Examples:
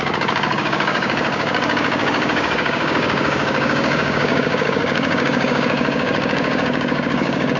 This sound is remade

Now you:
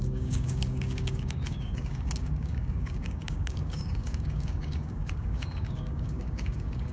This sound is remade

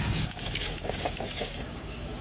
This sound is remade